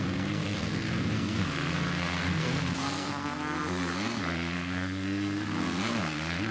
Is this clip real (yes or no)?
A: no